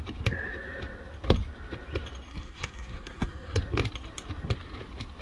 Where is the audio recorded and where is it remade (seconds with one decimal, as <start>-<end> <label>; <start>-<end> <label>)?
0.0-2.3 recorded; 2.3-3.6 remade; 3.6-5.2 recorded